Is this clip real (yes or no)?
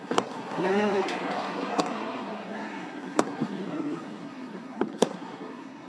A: no